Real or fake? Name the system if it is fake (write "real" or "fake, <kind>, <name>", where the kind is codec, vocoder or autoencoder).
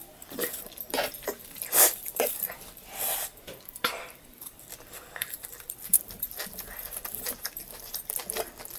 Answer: fake, vocoder, BigVGAN v2